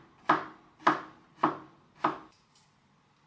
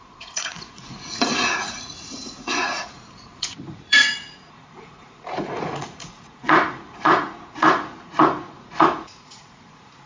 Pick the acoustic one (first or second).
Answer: first